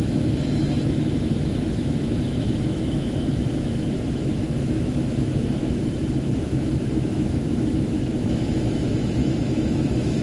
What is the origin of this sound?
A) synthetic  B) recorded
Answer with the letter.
A